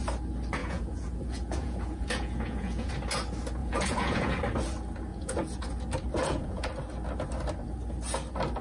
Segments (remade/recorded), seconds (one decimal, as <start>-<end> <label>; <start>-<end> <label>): 0.0-0.6 recorded; 0.6-2.9 remade; 2.9-3.6 recorded; 3.6-4.4 remade; 4.4-5.1 recorded; 5.1-5.7 remade; 5.7-6.2 recorded; 6.2-6.7 remade; 6.7-8.6 recorded